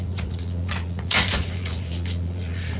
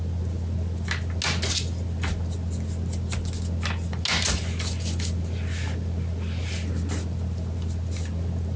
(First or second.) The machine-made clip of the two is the first